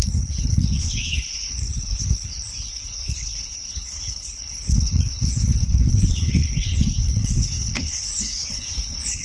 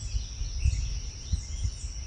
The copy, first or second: first